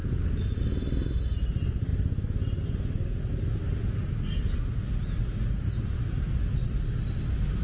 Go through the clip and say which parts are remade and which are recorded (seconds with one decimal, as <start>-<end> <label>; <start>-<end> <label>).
0.0-0.6 remade; 0.6-7.6 recorded